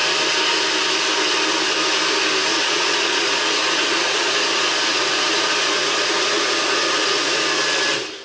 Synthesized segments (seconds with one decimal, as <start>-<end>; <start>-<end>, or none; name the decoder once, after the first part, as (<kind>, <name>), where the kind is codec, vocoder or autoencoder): 2.5-7.4 (vocoder, Vocos)